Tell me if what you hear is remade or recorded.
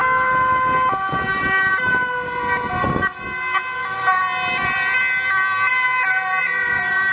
recorded